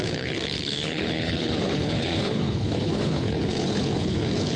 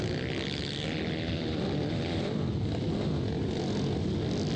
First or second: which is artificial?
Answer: first